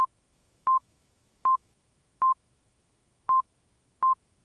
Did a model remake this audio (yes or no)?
yes